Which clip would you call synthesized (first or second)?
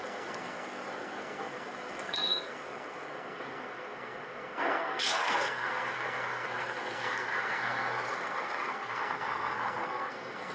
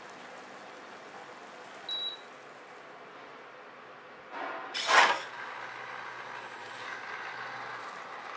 first